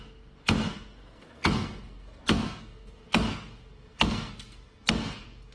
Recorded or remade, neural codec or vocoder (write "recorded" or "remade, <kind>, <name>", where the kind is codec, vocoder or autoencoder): remade, codec, SNAC